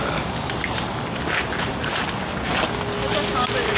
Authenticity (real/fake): real